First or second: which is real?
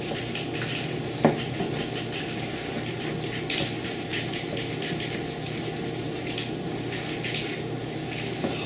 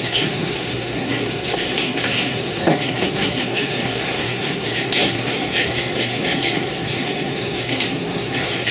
first